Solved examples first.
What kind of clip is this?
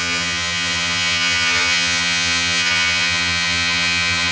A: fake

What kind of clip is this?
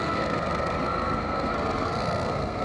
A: fake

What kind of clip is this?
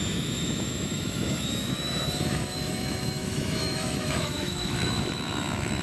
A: fake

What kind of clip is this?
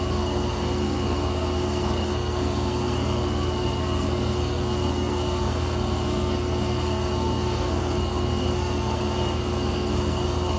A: fake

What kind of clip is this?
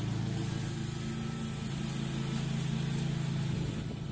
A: real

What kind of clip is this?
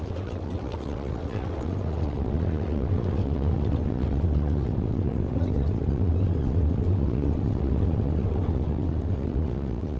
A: fake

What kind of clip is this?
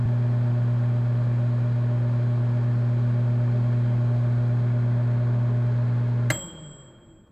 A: real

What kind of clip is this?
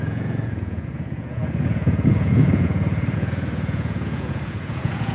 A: fake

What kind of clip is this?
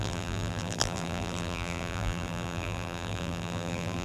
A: fake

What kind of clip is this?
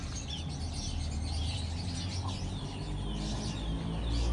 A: real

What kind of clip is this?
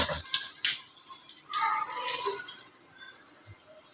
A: real